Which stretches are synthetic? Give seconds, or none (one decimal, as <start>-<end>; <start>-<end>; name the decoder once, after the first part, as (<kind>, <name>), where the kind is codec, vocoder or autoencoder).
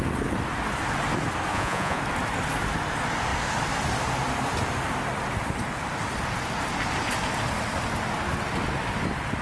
1.5-2.0 (vocoder, Vocos)